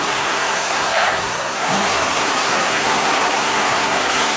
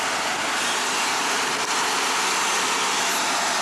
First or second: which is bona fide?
second